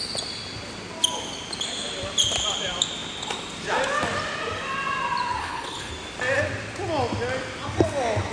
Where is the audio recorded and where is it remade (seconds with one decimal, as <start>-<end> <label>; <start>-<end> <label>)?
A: 0.0-5.4 recorded; 5.4-5.9 remade; 5.9-8.3 recorded